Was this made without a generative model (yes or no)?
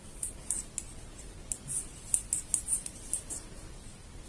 yes